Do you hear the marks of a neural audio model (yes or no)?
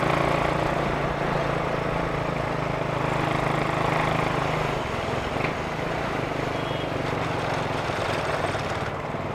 no